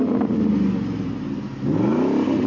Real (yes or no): yes